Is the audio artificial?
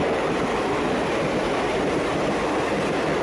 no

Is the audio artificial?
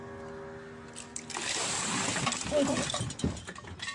no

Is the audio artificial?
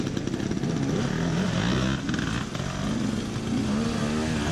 no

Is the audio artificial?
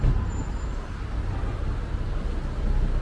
no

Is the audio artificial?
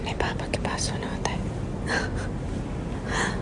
no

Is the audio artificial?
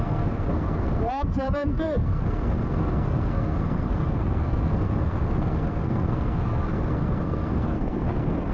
yes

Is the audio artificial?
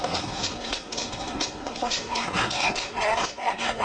yes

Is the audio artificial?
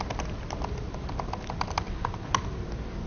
no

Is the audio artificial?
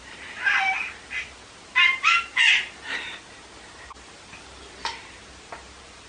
no